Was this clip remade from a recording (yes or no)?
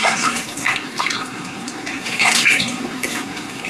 yes